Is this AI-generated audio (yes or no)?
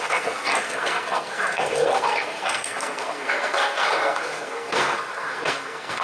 yes